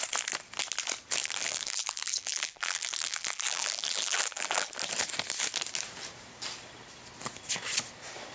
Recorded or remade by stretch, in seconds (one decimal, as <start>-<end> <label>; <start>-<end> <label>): 0.0-1.2 recorded; 1.2-4.7 remade; 4.7-8.3 recorded